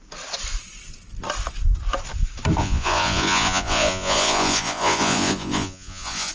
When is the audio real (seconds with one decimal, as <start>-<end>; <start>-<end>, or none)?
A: 0.0-2.6